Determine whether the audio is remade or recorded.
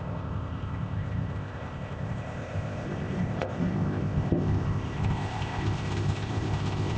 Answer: remade